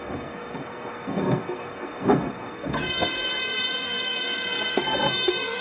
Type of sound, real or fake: fake